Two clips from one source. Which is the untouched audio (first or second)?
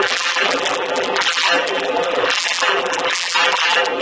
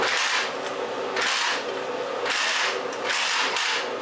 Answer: second